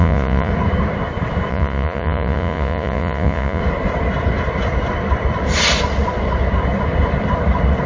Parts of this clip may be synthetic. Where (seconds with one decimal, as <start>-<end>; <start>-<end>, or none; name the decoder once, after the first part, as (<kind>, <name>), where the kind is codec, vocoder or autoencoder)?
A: 0.0-0.5 (vocoder, Vocos); 1.5-3.6